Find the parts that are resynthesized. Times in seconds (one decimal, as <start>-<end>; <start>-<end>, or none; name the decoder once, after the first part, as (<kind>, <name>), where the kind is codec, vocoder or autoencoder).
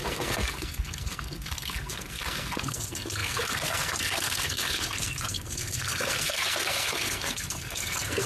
0.0-8.3 (codec, SNAC)